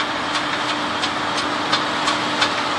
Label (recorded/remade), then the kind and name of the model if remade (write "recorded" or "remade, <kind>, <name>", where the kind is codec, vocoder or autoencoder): recorded